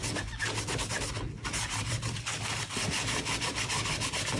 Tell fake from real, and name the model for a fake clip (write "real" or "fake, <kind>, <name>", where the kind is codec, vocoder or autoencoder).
real